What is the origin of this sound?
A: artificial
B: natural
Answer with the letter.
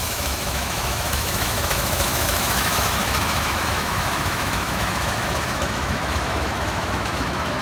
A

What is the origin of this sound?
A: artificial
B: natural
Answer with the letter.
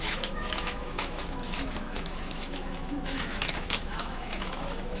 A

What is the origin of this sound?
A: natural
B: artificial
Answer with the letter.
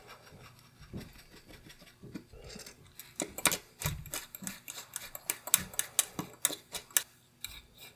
A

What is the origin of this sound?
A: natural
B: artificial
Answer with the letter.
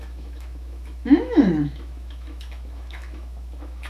B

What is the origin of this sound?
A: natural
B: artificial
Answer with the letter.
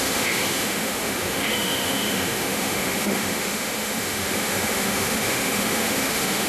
B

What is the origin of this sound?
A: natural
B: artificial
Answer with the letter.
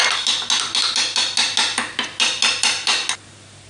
A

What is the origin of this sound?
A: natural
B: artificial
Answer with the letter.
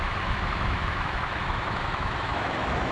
B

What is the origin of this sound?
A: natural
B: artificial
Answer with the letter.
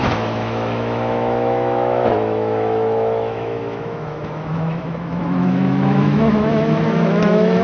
B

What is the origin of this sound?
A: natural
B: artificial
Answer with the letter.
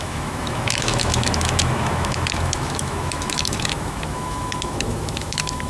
B